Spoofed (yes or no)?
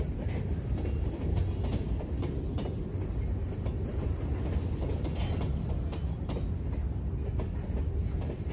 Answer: no